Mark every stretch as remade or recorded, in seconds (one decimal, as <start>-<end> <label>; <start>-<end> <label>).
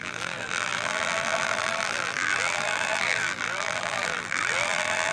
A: 0.0-5.1 remade